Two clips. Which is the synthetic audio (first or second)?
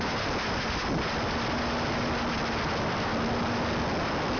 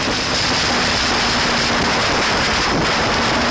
first